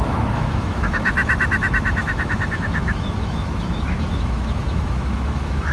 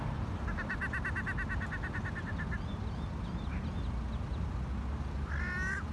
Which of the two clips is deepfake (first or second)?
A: first